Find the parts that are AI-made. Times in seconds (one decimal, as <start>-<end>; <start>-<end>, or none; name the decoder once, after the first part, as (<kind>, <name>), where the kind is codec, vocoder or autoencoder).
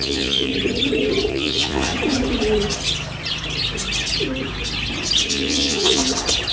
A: 0.0-0.5 (vocoder, Vocos); 1.3-1.9; 5.3-6.0